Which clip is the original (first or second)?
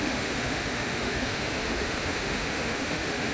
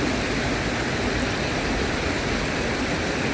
second